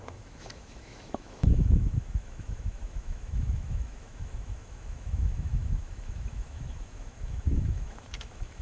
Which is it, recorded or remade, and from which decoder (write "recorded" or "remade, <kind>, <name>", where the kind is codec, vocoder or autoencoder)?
remade, autoencoder, DAC-VAE